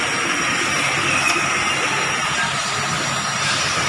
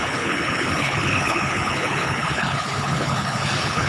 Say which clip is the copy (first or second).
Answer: second